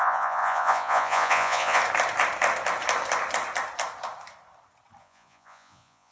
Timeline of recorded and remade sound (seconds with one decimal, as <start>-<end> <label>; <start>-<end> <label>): 0.0-1.8 remade; 1.8-5.0 recorded; 5.0-6.1 remade